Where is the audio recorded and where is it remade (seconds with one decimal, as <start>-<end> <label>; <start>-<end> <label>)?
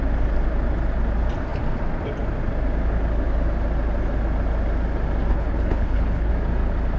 0.0-5.3 recorded; 5.3-6.3 remade; 6.3-7.0 recorded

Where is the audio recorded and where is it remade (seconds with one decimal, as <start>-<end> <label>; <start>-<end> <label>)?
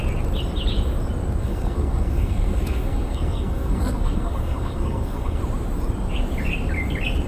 0.0-1.4 recorded; 1.4-5.4 remade; 5.4-7.3 recorded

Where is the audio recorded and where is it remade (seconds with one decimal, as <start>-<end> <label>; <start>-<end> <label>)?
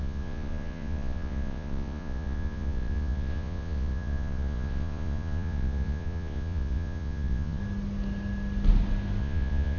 0.0-7.6 remade; 7.6-9.2 recorded; 9.2-9.8 remade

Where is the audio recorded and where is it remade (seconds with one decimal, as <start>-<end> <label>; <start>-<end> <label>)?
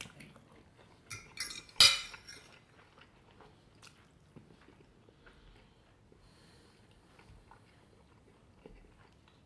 0.0-9.5 recorded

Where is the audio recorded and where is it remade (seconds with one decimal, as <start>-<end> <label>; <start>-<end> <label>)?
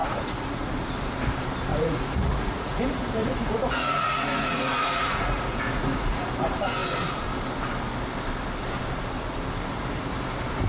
0.0-0.7 remade; 0.7-1.7 recorded; 1.7-2.8 remade; 2.8-3.2 recorded; 3.2-6.3 remade; 6.3-10.7 recorded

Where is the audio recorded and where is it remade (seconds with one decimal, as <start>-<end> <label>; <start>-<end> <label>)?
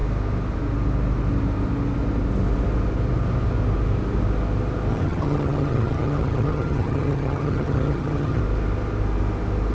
0.0-4.9 recorded; 4.9-8.4 remade; 8.4-9.7 recorded